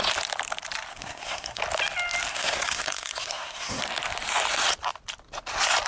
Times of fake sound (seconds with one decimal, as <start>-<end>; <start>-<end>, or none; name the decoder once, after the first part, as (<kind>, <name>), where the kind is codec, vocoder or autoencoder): 0.9-1.6 (codec, SNAC); 2.3-3.8